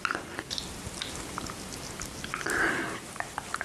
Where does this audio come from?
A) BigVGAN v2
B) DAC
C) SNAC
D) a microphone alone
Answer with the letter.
D